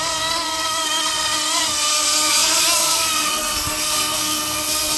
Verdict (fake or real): fake